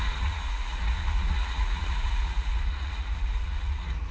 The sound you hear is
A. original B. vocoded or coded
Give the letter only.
B